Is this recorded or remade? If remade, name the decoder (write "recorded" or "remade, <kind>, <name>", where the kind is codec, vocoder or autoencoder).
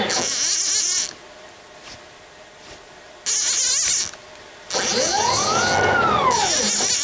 recorded